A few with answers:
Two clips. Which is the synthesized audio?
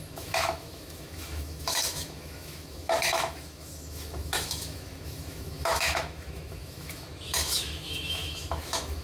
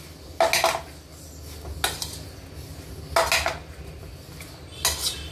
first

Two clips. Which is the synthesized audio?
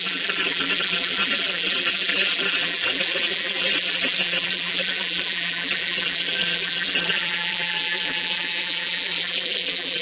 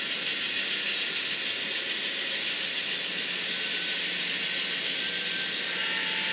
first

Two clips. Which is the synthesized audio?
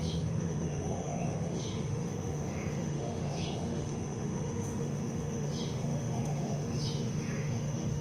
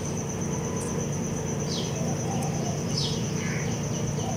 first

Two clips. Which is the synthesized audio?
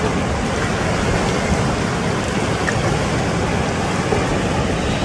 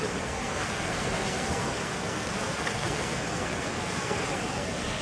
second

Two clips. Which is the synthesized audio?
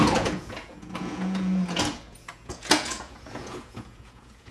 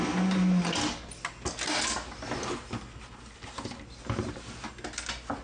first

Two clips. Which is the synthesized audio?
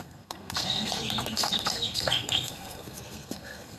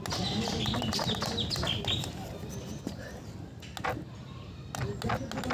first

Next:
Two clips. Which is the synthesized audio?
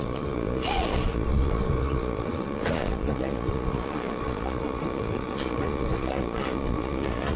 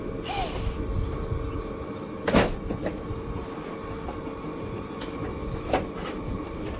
first